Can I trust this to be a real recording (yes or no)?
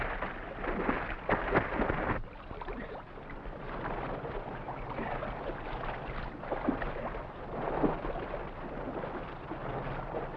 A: yes